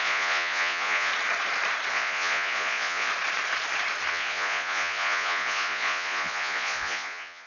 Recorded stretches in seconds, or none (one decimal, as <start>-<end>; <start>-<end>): 1.1-1.9; 3.1-4.1